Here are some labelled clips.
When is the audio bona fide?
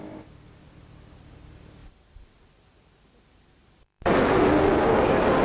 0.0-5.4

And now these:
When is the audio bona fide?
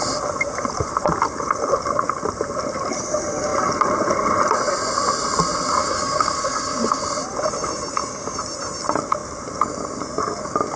0.0-5.8; 7.0-10.8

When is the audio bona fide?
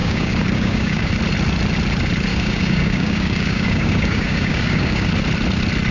1.1-2.3; 5.1-5.9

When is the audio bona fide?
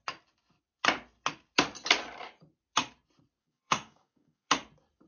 0.0-3.4; 4.5-5.1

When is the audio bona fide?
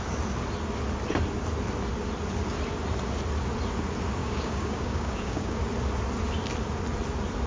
0.0-4.2; 5.6-7.5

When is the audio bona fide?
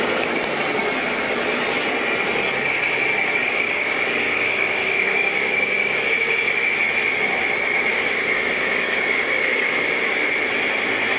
0.0-3.4; 6.0-7.9; 10.3-11.2